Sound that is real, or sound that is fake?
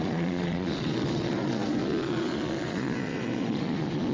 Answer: fake